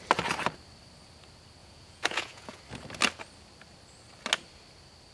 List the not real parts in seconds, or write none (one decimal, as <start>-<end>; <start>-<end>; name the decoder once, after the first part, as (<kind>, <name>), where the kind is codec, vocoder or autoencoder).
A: 1.6-2.6 (vocoder, Vocos)